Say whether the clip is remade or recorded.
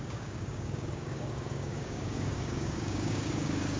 remade